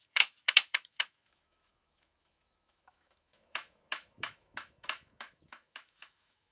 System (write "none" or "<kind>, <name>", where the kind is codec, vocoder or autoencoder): autoencoder, DAC-VAE